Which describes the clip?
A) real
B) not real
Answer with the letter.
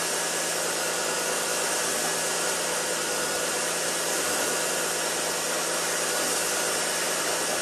A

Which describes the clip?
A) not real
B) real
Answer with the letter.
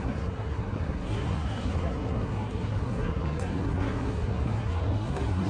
A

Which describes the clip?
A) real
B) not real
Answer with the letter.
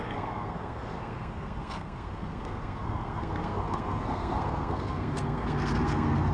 B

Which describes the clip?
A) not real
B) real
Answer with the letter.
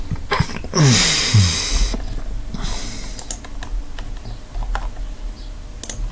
B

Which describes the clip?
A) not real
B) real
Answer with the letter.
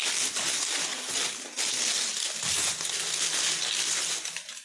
B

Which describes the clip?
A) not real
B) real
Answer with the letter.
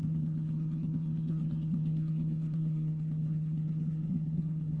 A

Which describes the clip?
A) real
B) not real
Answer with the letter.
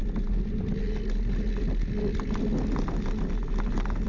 A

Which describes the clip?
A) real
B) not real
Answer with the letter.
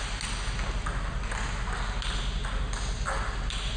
A